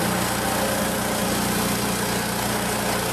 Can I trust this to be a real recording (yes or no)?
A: yes